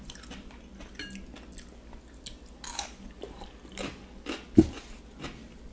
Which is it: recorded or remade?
recorded